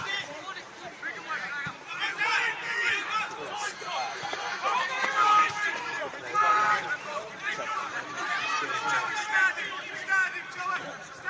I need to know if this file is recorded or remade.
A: remade